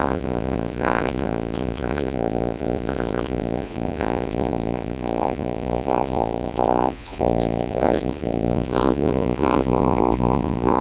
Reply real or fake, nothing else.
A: fake